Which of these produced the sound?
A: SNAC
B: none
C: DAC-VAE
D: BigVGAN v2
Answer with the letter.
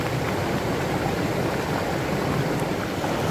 B